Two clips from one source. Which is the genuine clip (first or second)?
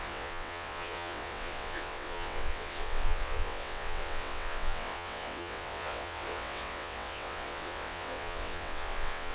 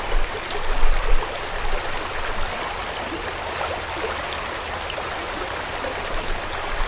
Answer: second